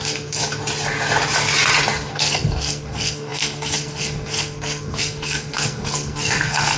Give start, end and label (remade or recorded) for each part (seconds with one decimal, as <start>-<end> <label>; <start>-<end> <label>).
0.0-0.4 remade; 0.4-2.1 recorded; 2.1-6.8 remade